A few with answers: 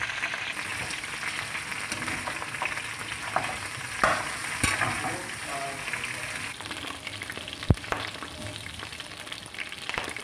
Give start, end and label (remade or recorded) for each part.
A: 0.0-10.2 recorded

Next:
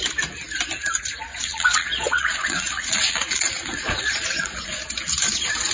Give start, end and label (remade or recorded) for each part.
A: 0.0-1.3 recorded; 1.3-4.7 remade; 4.7-5.7 recorded

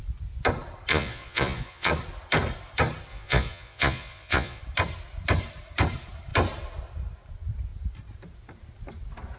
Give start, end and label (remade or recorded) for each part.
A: 0.0-0.9 recorded; 0.9-1.9 remade; 1.9-3.1 recorded; 3.1-4.6 remade; 4.6-9.4 recorded

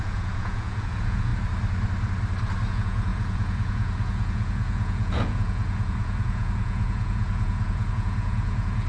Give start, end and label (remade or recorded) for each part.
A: 0.0-1.3 remade; 1.3-2.7 recorded; 2.7-8.9 remade

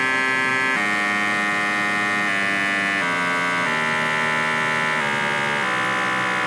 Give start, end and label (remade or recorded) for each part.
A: 0.0-6.5 recorded